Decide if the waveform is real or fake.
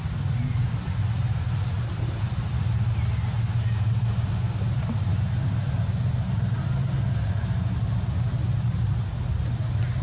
real